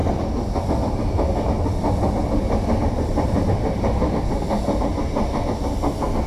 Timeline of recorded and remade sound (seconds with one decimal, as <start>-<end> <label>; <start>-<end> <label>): 0.0-0.6 remade; 0.6-6.3 recorded

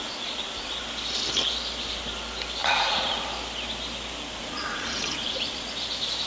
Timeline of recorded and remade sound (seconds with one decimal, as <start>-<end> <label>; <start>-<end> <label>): 0.0-2.6 recorded; 2.6-3.2 remade; 3.2-4.4 recorded; 4.4-5.7 remade; 5.7-6.3 recorded

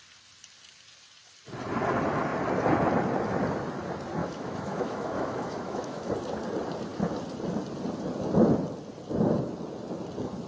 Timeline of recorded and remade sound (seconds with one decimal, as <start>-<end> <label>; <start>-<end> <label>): 0.0-4.2 recorded; 4.2-6.1 remade; 6.1-10.5 recorded

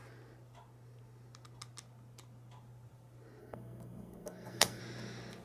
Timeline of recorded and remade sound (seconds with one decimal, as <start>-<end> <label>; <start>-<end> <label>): 0.0-3.4 recorded; 3.4-4.8 remade; 4.8-5.4 recorded

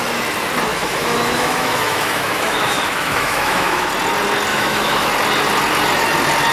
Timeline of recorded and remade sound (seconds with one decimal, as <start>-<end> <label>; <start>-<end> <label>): 0.0-0.7 recorded; 0.7-3.9 remade; 3.9-4.5 recorded; 4.5-5.1 remade; 5.1-6.5 recorded

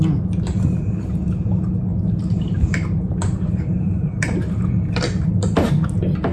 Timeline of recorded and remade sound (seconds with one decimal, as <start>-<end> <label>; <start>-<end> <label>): 0.0-1.9 recorded; 1.9-5.7 remade; 5.7-6.3 recorded